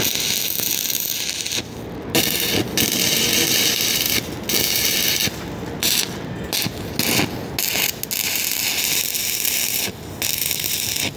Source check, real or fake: real